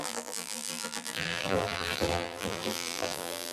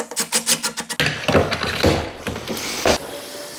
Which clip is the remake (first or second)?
first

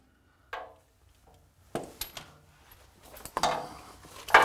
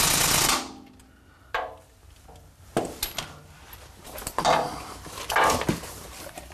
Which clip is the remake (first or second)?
second